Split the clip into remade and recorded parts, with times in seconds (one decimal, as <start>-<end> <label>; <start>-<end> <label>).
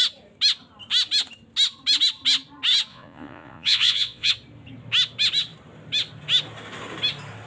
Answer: 0.0-2.9 recorded; 2.9-4.3 remade; 4.3-7.5 recorded